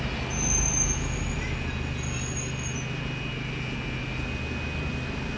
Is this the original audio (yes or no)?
yes